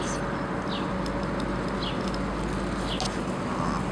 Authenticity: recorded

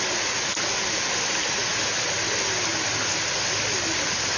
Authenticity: recorded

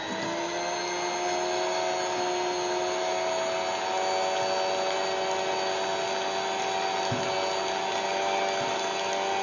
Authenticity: recorded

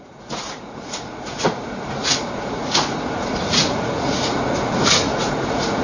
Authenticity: remade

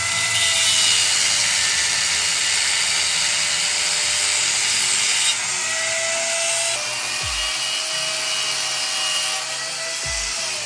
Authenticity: recorded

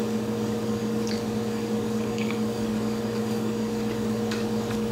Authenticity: remade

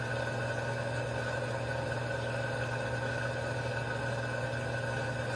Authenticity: recorded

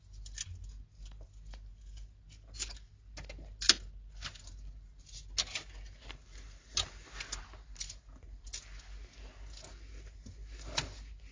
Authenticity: recorded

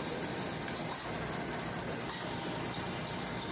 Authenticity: recorded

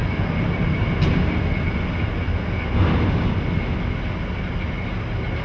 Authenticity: recorded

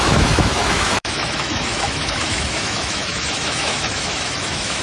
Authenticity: remade